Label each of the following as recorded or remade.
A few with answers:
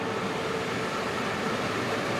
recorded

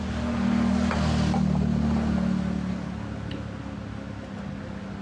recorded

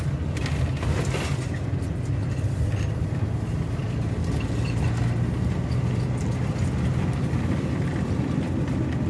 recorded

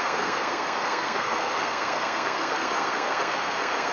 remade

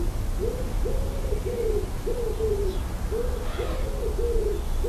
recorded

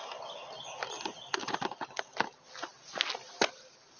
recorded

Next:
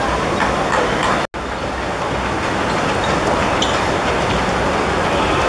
recorded